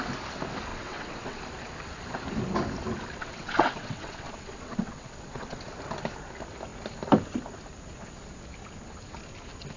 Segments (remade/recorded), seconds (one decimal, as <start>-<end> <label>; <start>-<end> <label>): 0.0-0.7 recorded; 0.7-1.4 remade; 1.4-3.2 recorded; 3.2-5.6 remade; 5.6-9.8 recorded